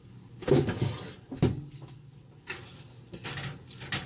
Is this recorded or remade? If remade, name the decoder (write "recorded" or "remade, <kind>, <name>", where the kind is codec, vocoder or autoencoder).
recorded